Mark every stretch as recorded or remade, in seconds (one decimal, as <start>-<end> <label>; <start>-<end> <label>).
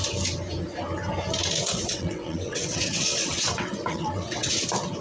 0.0-1.6 recorded; 1.6-4.6 remade; 4.6-5.0 recorded